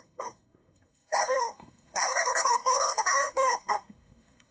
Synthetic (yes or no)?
yes